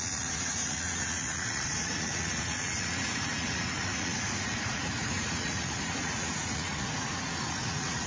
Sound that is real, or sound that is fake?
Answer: fake